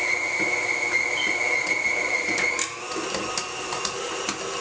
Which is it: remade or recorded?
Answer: recorded